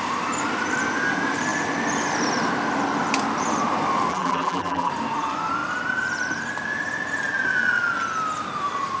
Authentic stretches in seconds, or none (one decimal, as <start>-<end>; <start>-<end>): 0.0-4.1; 4.9-9.0